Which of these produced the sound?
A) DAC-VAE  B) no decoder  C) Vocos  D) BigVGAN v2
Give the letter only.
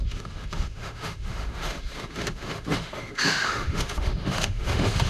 A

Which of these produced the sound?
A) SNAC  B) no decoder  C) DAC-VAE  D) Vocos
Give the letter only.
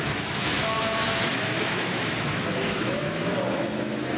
C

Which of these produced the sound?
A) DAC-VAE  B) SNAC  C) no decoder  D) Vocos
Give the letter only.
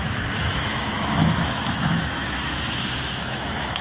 A